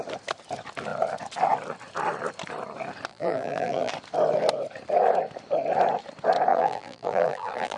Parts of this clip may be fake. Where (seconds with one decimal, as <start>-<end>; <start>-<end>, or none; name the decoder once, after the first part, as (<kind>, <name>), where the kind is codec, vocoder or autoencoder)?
3.1-3.9 (vocoder, BigVGAN v2); 6.5-7.8